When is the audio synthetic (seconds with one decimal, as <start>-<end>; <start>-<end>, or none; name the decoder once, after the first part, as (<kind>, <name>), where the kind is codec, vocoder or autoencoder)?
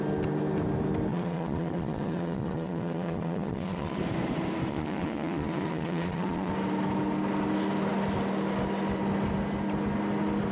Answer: 1.1-4.0 (vocoder, Vocos); 4.7-6.5